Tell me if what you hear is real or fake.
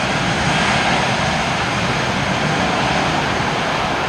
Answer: real